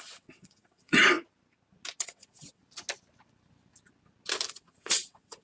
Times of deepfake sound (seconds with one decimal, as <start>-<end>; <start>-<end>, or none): 0.0-1.0; 2.0-2.6; 4.5-5.4

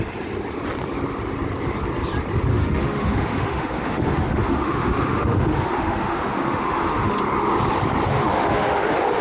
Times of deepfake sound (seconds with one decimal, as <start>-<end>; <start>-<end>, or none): 2.5-7.2; 8.1-9.2

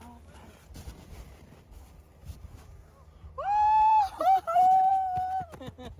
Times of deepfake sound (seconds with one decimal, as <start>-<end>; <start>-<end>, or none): 2.2-4.9

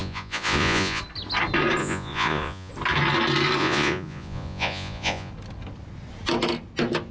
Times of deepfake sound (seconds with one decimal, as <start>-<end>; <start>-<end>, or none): 0.0-1.0; 1.8-2.7; 3.6-5.3

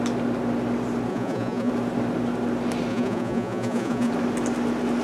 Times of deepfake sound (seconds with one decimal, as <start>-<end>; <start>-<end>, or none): 1.1-1.7; 2.9-4.1

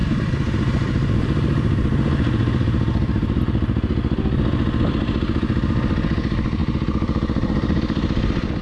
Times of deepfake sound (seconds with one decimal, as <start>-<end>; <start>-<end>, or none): 0.0-3.4; 6.6-7.8

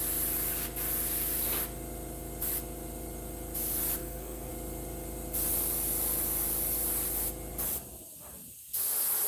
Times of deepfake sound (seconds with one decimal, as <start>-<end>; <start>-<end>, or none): 4.0-4.5